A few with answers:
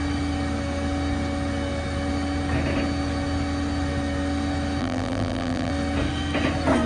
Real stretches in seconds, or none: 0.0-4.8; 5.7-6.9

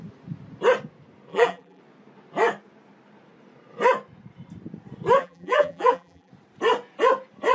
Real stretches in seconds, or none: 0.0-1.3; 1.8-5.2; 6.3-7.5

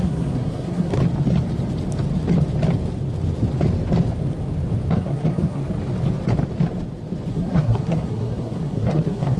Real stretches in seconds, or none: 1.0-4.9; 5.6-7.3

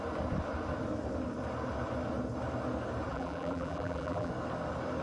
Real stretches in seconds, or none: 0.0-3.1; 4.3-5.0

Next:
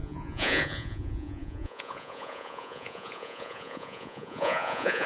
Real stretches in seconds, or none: none

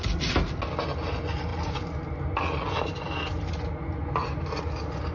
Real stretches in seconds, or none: 0.0-5.1

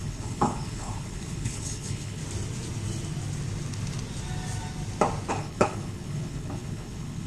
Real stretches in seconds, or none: 2.2-5.3